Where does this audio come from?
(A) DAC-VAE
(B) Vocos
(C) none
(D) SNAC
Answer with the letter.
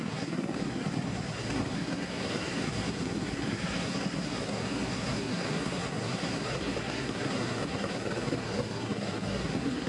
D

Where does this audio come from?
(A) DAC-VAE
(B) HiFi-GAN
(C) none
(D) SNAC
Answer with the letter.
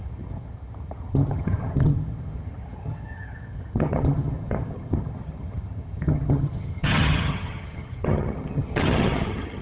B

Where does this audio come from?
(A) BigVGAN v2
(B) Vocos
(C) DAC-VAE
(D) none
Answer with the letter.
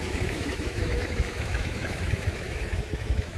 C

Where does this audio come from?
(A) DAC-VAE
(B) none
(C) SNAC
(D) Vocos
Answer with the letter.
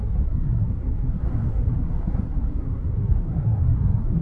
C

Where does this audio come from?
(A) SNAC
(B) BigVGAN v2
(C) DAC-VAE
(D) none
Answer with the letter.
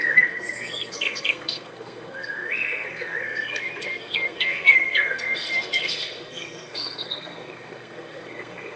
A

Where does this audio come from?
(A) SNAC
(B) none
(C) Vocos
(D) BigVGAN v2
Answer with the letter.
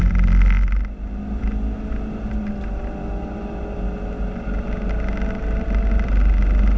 B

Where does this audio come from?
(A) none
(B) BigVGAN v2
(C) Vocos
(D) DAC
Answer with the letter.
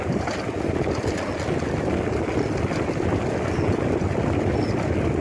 A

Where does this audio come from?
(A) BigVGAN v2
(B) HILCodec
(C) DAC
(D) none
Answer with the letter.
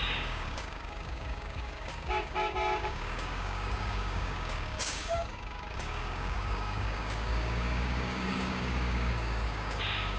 C